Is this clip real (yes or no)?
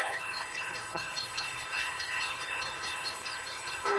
no